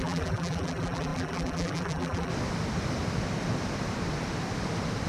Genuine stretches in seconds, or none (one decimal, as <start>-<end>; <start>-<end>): 2.3-5.1